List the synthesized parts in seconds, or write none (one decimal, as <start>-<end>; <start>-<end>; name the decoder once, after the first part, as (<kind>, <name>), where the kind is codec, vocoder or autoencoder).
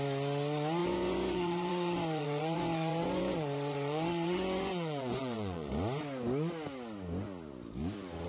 0.8-5.7 (vocoder, Vocos)